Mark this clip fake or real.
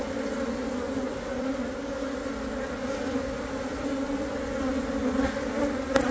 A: real